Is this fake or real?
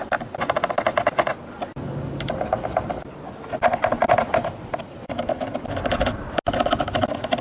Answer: real